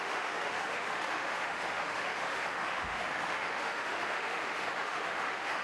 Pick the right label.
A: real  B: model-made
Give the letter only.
B